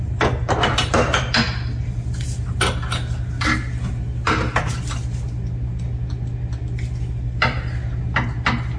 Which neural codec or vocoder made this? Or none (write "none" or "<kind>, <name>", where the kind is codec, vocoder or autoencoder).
none